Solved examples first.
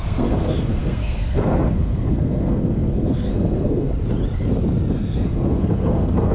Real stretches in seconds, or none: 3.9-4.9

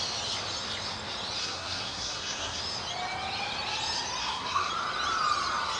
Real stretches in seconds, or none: 0.0-1.4; 2.6-4.2; 4.7-5.8

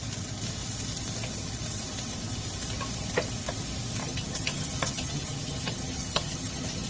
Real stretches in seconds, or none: 0.0-4.0

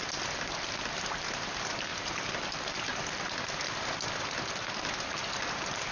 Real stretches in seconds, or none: 0.0-5.9

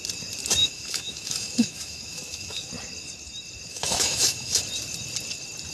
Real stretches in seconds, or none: 0.0-0.6; 2.7-3.7; 4.6-5.7

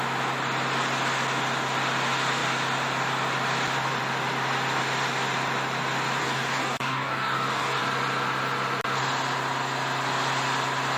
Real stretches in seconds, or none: 0.0-6.2; 7.8-11.0

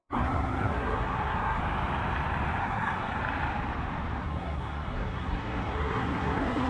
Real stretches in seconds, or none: 1.6-2.6; 3.2-4.2